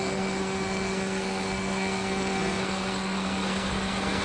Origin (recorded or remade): remade